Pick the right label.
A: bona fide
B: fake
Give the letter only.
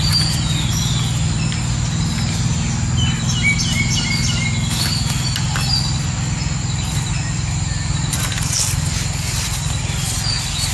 A